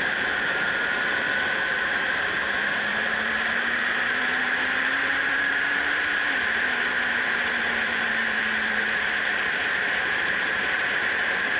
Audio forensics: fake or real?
fake